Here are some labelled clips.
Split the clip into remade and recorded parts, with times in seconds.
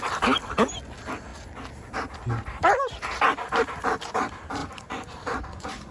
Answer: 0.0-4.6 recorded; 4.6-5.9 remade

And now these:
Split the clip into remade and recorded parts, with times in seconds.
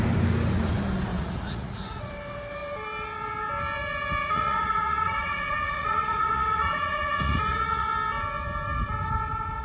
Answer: 0.0-1.1 recorded; 1.1-2.1 remade; 2.1-4.2 recorded; 4.2-7.9 remade; 7.9-9.6 recorded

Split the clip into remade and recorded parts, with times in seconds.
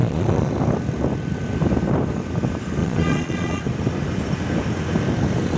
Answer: 0.0-0.5 remade; 0.5-2.8 recorded; 2.8-3.6 remade; 3.6-5.6 recorded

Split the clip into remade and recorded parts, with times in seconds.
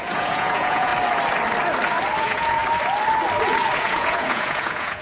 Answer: 0.0-0.9 remade; 0.9-2.2 recorded; 2.2-2.6 remade; 2.6-3.7 recorded; 3.7-5.0 remade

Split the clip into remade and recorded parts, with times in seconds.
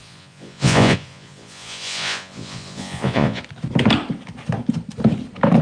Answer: 0.0-3.4 remade; 3.4-5.6 recorded